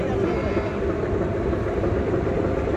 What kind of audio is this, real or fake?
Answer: real